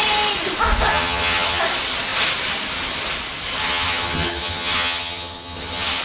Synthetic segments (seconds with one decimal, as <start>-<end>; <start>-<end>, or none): 0.9-1.6; 3.6-6.0